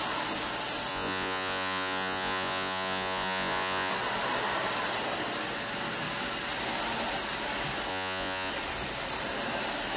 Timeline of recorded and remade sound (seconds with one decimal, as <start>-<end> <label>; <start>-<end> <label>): 0.0-0.9 recorded; 0.9-3.9 remade; 3.9-7.9 recorded; 7.9-8.5 remade; 8.5-10.0 recorded